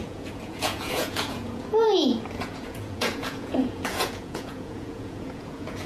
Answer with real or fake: fake